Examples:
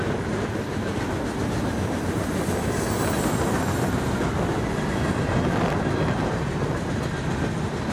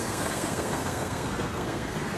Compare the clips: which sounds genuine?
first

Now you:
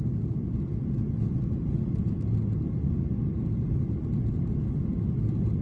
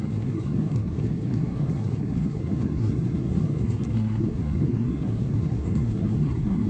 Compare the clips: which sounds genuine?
first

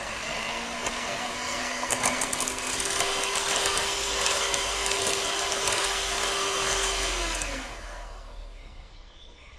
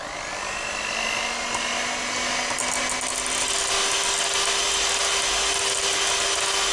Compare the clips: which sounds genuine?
second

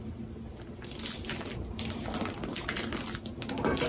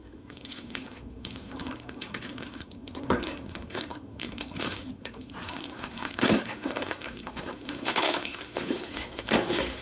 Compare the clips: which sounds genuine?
first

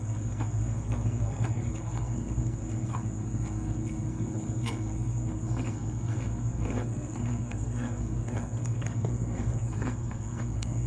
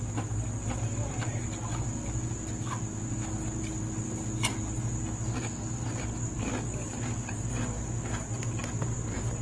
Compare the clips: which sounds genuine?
second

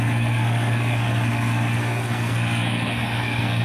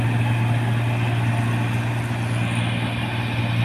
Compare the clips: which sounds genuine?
second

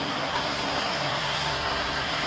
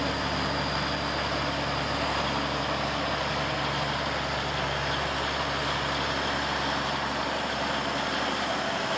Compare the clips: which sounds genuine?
second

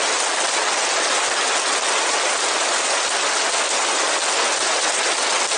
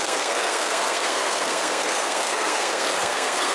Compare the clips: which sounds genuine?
first